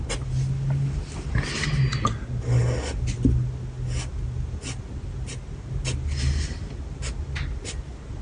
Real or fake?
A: real